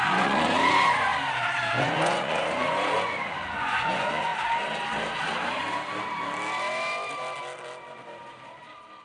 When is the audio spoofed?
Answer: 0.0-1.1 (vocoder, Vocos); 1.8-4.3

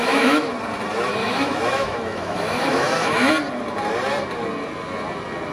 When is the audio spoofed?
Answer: 0.0-0.5 (autoencoder, DAC-VAE); 1.2-3.3

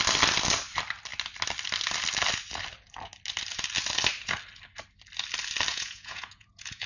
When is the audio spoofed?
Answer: 5.7-6.9 (vocoder, Vocos)

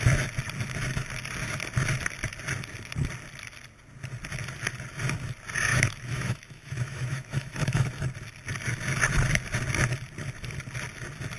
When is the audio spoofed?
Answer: 5.7-7.9 (autoencoder, DAC-VAE)